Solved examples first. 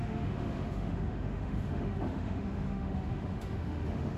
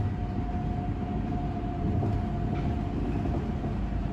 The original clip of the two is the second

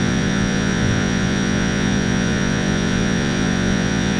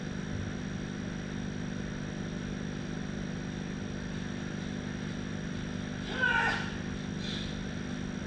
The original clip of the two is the second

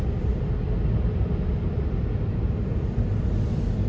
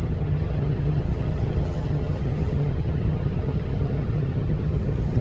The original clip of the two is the first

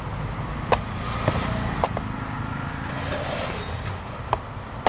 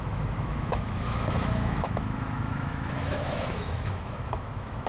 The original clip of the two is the first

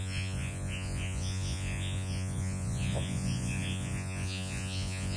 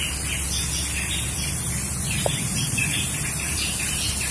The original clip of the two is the second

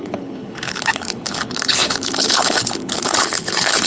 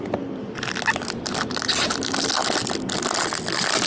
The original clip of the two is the second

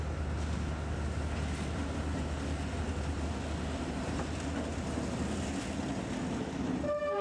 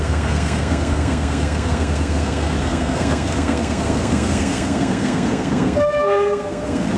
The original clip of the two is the first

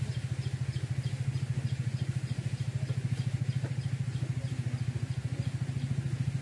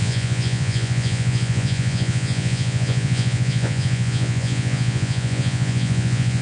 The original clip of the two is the first